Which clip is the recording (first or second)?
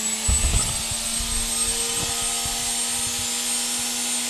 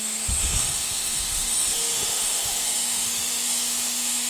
first